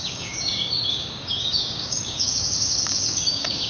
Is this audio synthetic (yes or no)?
yes